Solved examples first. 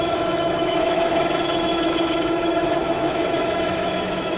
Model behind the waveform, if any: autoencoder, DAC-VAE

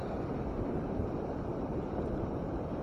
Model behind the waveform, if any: none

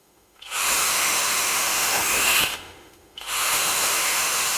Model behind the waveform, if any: autoencoder, DAC-VAE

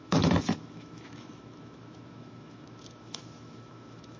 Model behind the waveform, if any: autoencoder, DAC-VAE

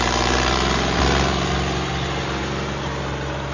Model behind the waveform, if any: none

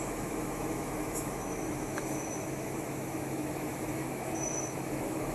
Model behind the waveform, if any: autoencoder, DAC-VAE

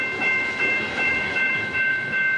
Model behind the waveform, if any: autoencoder, DAC-VAE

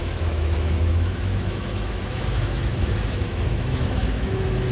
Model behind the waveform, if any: autoencoder, DAC-VAE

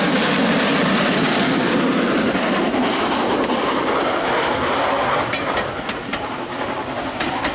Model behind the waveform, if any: none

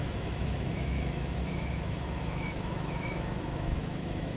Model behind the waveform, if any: autoencoder, DAC-VAE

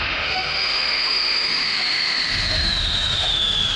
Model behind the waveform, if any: autoencoder, DAC-VAE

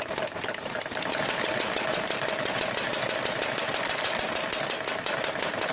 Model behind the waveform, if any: none